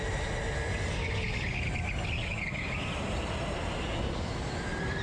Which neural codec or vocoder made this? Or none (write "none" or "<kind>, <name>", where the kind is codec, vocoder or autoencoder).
none